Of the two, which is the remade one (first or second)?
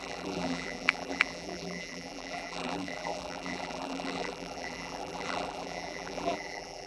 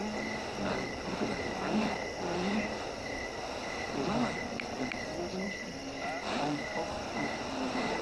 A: first